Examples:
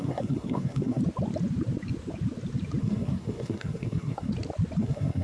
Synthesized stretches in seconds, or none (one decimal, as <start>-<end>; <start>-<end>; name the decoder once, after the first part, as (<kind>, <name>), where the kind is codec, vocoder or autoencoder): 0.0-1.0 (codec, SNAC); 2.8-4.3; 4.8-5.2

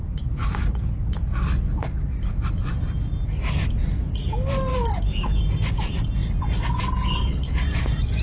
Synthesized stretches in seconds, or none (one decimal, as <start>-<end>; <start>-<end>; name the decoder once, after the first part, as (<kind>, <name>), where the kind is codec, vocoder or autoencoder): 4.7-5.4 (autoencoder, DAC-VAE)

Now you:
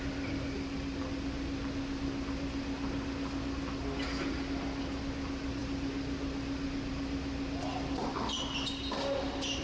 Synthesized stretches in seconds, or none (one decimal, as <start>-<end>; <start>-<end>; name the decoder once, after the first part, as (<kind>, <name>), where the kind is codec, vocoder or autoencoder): none

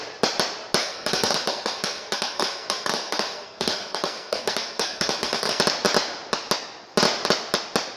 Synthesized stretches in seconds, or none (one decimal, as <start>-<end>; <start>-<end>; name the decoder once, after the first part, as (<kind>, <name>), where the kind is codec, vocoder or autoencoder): 0.8-5.6 (codec, SNAC)

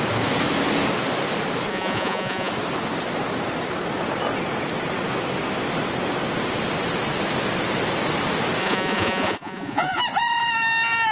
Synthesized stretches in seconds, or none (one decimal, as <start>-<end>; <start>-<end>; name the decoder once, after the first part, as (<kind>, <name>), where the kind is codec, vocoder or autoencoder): 1.7-2.5 (vocoder, Vocos); 8.6-10.0